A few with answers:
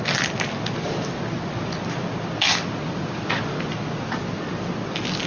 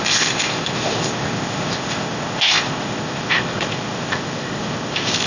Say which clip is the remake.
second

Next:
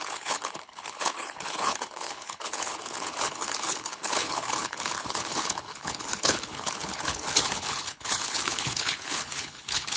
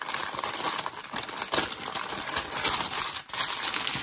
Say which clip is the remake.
first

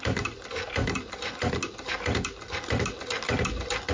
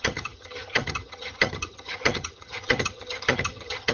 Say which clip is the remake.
second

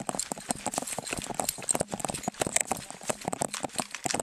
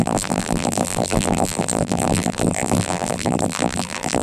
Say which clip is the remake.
second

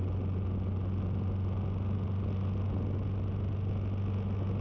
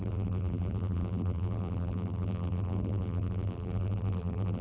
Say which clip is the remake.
second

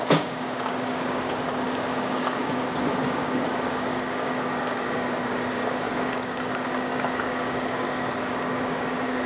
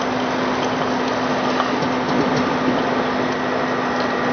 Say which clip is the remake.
first